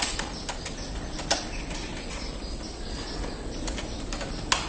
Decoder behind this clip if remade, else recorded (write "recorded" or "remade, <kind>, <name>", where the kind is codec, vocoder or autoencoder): recorded